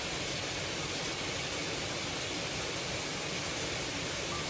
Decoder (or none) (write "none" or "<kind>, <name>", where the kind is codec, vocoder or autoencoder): none